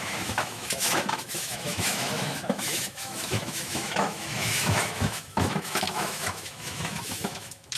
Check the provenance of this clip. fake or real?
fake